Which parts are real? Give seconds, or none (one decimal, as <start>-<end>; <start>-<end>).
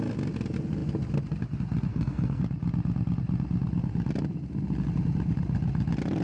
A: 0.0-1.9; 2.4-6.2